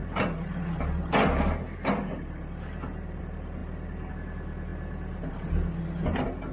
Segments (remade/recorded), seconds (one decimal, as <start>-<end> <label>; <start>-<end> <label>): 0.0-6.5 recorded